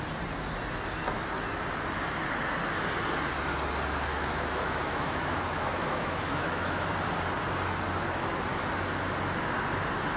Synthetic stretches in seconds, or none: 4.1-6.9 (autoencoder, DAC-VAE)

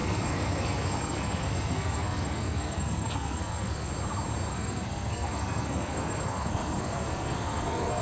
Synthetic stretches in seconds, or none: 0.0-3.9 (codec, SNAC); 4.5-8.0

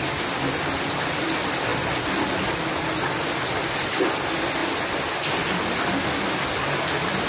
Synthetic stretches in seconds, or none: none

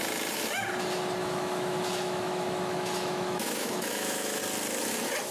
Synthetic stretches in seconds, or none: 1.2-4.4 (autoencoder, DAC-VAE)

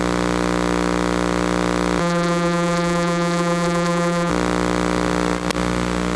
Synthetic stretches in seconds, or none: 2.0-4.3 (vocoder, BigVGAN v2)

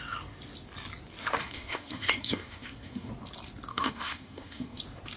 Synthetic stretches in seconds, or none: 1.4-3.1 (codec, SNAC); 3.7-4.8